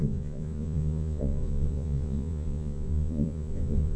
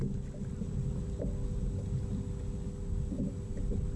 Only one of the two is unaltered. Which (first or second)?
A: second